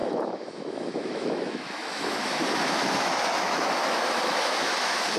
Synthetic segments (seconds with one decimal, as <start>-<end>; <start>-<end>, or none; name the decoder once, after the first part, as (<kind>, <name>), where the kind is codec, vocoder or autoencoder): 0.0-5.2 (autoencoder, DAC-VAE)